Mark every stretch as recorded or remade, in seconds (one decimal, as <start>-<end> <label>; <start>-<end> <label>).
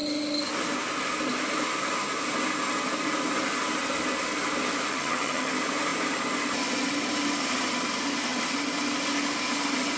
0.0-4.9 recorded; 4.9-5.5 remade; 5.5-10.0 recorded